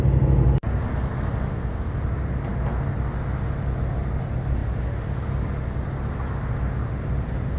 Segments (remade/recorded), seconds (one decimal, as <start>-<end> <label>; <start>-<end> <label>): 0.0-7.6 recorded